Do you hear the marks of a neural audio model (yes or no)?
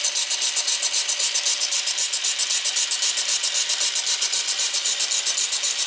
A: no